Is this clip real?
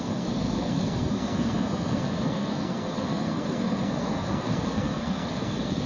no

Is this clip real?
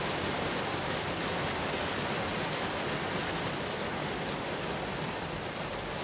yes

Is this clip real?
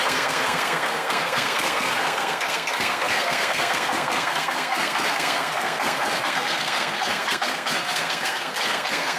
no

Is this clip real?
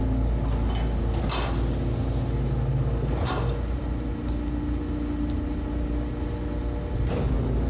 yes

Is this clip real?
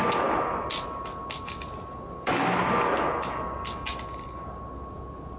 yes